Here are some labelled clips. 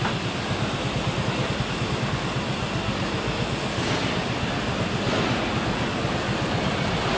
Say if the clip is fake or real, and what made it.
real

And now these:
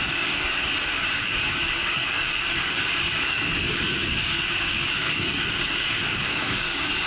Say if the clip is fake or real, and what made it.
fake, codec, DAC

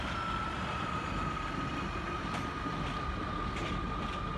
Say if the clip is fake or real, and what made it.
real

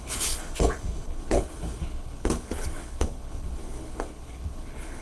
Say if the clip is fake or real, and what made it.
fake, codec, HILCodec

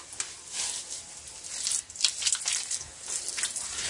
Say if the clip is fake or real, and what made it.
real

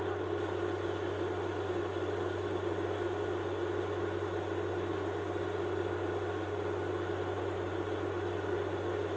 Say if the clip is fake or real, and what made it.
real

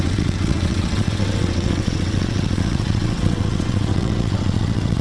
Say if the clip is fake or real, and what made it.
fake, vocoder, WaveNeXt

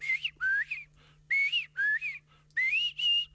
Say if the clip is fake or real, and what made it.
real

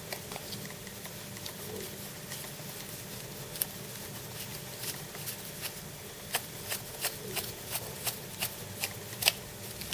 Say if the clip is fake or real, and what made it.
real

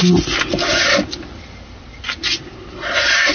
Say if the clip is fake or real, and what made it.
real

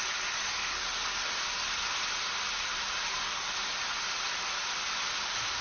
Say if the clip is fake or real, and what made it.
real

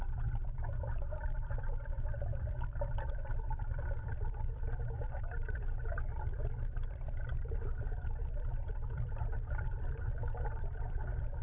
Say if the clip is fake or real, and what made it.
fake, vocoder, BigVGAN v2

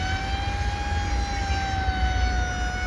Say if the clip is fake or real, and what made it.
real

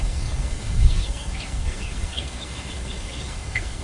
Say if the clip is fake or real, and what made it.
fake, codec, SNAC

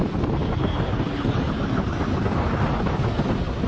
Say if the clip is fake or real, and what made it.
real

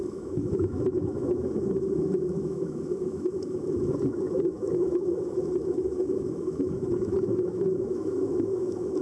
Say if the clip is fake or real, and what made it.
fake, autoencoder, DAC-VAE